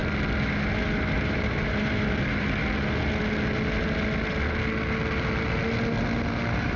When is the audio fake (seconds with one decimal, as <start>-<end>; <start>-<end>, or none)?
1.1-2.6